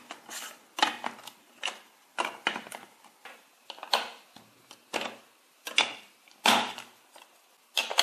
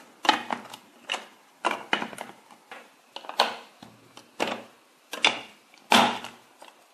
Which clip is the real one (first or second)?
second